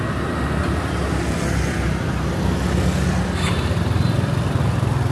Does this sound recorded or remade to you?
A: recorded